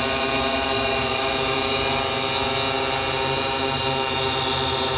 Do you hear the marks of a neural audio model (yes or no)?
no